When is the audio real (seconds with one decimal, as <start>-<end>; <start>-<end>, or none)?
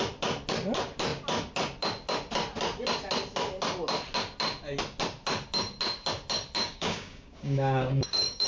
0.0-6.6